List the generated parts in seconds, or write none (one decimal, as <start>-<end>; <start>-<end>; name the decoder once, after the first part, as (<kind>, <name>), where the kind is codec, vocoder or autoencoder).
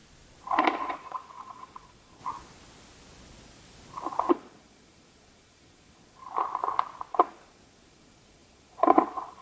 0.6-2.2 (vocoder, Vocos); 4.3-6.2; 7.1-9.4